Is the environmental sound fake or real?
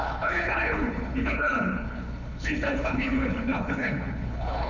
fake